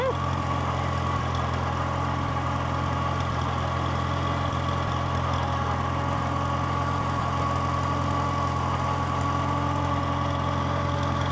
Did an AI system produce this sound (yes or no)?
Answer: no